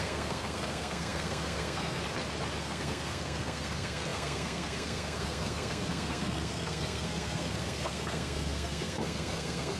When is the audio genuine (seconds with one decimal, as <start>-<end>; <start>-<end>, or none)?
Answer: 2.0-2.6